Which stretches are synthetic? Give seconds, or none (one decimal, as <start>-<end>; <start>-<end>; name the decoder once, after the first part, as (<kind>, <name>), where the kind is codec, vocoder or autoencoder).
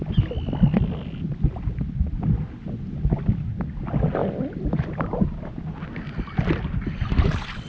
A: none